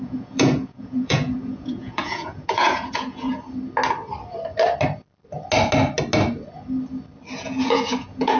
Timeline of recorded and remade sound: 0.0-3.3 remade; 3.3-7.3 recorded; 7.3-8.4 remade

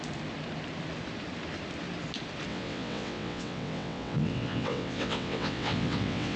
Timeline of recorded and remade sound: 0.0-2.5 recorded; 2.5-6.4 remade

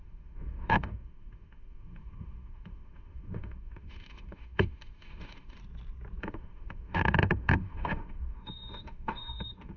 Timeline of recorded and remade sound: 0.0-5.6 remade; 5.6-6.2 recorded; 6.2-9.8 remade

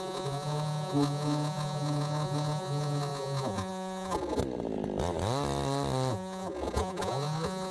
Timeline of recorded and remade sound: 0.0-4.4 remade; 4.4-6.1 recorded; 6.1-7.7 remade